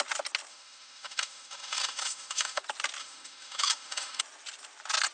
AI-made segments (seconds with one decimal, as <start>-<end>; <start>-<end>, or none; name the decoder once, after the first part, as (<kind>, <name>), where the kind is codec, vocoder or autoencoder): 0.5-2.6 (autoencoder, DAC-VAE); 3.0-4.2